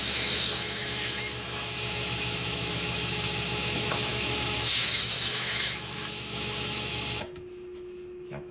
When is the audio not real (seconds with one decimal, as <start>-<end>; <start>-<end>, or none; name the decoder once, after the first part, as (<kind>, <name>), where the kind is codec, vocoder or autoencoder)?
0.0-8.5 (autoencoder, DAC-VAE)

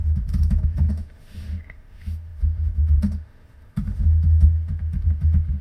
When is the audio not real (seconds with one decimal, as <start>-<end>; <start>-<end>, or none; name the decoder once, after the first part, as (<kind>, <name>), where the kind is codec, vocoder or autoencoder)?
0.0-5.6 (autoencoder, DAC-VAE)

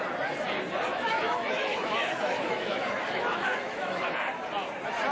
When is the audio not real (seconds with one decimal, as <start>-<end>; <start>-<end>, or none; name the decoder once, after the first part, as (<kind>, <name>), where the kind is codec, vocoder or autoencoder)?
0.9-4.0 (autoencoder, DAC-VAE)

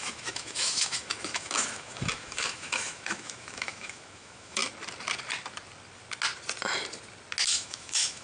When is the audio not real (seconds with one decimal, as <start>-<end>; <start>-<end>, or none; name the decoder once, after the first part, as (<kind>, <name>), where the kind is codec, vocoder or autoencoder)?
0.0-4.6 (autoencoder, DAC-VAE); 7.5-8.2

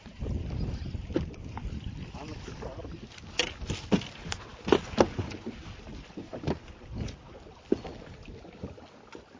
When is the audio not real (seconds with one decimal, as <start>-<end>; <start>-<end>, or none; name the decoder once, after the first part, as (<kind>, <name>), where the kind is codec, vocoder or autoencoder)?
none

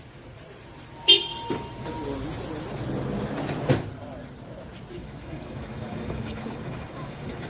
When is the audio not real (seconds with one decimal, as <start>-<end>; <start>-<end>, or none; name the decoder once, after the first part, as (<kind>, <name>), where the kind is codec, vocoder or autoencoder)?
5.0-7.5 (autoencoder, DAC-VAE)

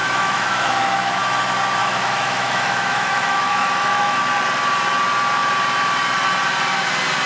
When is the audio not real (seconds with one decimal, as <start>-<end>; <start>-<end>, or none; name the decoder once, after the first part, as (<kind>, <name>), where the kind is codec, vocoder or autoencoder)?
0.0-1.2 (autoencoder, DAC-VAE); 1.8-4.2